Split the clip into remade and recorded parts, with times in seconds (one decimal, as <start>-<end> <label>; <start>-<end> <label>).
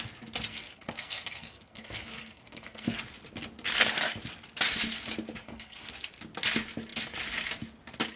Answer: 0.0-0.5 recorded; 0.5-3.0 remade; 3.0-5.4 recorded; 5.4-5.9 remade; 5.9-8.2 recorded